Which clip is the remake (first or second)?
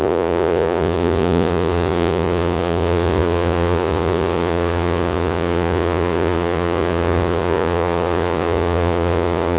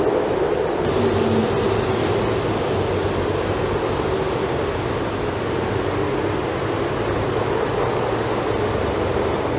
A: first